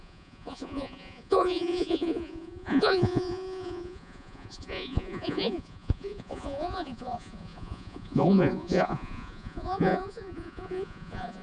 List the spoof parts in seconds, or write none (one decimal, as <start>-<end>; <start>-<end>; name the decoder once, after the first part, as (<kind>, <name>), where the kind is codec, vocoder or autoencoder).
0.0-11.4 (vocoder, Vocos)